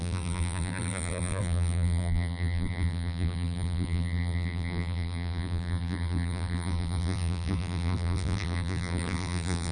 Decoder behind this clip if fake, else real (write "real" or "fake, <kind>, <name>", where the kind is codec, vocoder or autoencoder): fake, vocoder, BigVGAN v2